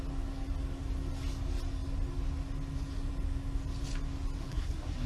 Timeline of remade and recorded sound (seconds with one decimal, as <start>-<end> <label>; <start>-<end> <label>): 0.0-4.4 recorded; 4.4-5.1 remade